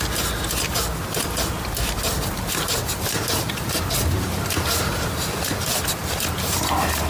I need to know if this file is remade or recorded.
recorded